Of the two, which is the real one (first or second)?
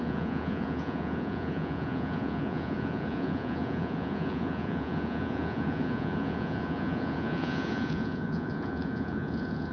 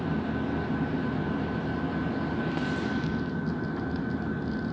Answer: second